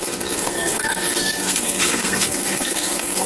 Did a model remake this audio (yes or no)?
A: yes